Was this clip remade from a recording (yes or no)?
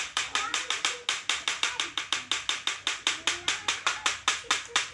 no